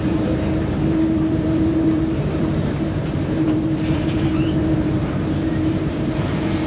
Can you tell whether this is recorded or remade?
remade